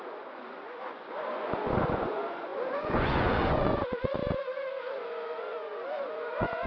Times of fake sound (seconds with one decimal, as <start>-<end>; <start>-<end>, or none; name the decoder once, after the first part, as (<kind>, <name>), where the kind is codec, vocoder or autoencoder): 0.0-4.2 (vocoder, Vocos); 4.8-6.7